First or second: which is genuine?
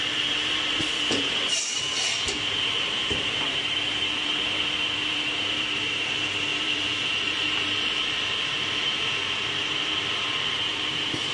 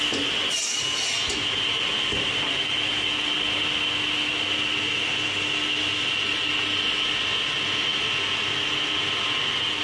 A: second